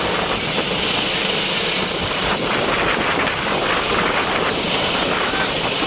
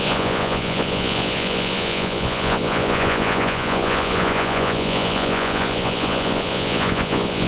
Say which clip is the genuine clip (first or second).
first